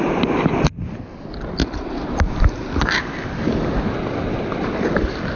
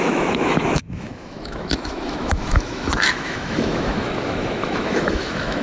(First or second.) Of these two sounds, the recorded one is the first